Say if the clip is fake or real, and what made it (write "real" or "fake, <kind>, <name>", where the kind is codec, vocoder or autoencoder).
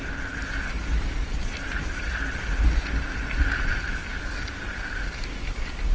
real